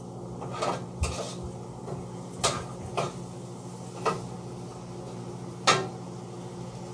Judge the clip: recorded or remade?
recorded